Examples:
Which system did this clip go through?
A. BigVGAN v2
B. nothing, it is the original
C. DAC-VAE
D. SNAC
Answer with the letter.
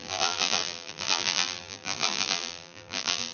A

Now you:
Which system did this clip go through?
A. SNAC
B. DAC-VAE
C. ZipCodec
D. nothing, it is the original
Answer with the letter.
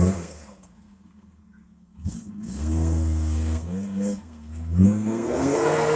A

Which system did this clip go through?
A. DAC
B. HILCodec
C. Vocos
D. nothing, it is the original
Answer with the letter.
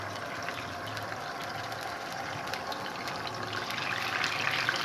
D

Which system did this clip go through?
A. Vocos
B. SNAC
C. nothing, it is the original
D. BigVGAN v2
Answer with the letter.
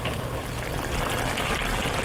C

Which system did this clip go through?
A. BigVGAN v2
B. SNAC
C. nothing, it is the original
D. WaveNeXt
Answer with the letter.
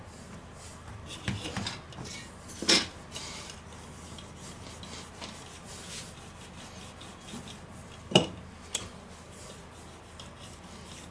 C